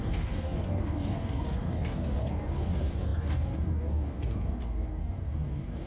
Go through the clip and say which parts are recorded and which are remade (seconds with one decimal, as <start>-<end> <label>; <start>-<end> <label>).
0.0-5.9 remade

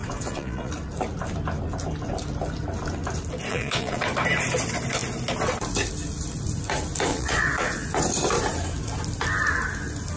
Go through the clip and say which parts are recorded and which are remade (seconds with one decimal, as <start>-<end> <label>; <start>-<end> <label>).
0.0-0.7 remade; 0.7-3.5 recorded; 3.5-4.0 remade; 4.0-7.1 recorded; 7.1-7.9 remade; 7.9-10.2 recorded

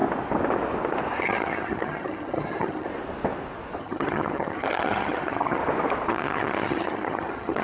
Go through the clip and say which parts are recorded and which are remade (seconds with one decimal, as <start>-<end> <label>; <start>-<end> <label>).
0.0-1.2 recorded; 1.2-2.9 remade; 2.9-3.8 recorded; 3.8-5.6 remade; 5.6-6.1 recorded; 6.1-7.6 remade

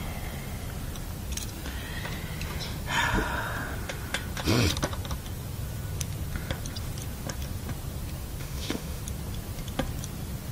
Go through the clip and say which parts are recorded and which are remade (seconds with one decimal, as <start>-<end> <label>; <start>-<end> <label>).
0.0-8.4 recorded; 8.4-9.0 remade; 9.0-10.5 recorded

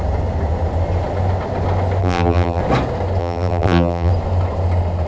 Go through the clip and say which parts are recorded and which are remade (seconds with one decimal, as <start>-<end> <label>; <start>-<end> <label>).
0.0-2.0 recorded; 2.0-2.6 remade; 2.6-3.2 recorded; 3.2-4.1 remade; 4.1-5.1 recorded

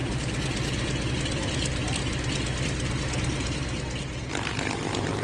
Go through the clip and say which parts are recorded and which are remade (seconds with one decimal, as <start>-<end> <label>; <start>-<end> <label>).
0.0-1.1 recorded; 1.1-2.0 remade; 2.0-4.3 recorded; 4.3-5.2 remade

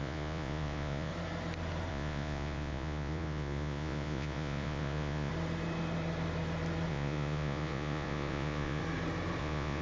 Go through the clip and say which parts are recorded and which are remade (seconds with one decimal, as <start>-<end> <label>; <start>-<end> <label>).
0.0-1.1 remade; 1.1-1.9 recorded; 1.9-5.3 remade; 5.3-6.9 recorded; 6.9-8.8 remade; 8.8-9.4 recorded; 9.4-9.8 remade

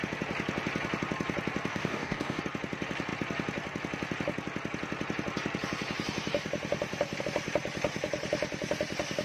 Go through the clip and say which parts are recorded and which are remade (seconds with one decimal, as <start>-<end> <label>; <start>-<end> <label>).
0.0-1.7 recorded; 1.7-2.4 remade; 2.4-9.2 recorded